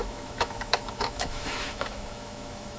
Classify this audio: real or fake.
fake